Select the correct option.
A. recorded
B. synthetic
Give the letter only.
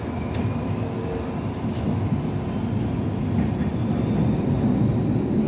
A